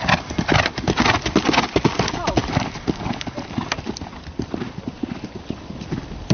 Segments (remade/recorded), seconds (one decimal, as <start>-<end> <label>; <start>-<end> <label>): 0.0-6.3 recorded